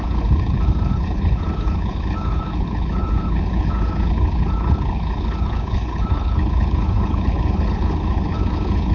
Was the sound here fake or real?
fake